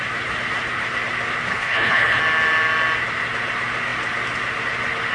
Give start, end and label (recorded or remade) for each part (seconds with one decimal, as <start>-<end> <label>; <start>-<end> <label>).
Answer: 0.0-1.5 recorded; 1.5-2.2 remade; 2.2-5.1 recorded